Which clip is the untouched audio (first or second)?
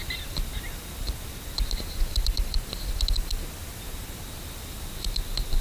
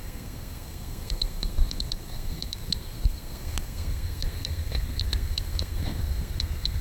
first